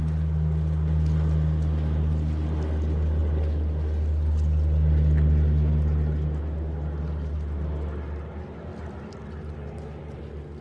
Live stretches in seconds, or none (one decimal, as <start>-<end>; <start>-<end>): 0.0-10.6